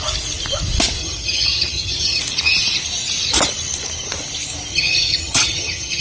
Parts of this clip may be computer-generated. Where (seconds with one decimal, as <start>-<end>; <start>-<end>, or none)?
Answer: 1.0-2.2; 4.7-6.0